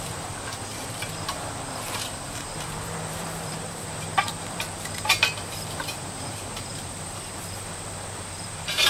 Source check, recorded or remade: remade